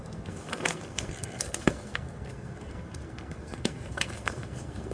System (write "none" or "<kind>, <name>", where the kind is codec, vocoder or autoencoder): codec, SNAC